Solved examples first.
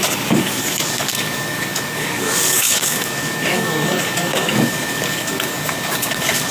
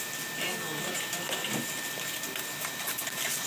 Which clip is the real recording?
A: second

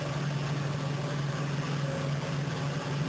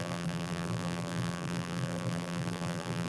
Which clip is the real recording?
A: first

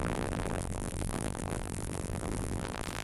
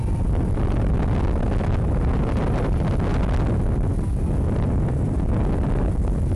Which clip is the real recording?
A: second